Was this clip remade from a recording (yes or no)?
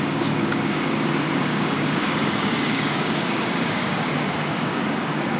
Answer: yes